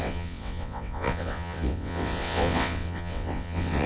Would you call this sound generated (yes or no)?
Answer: yes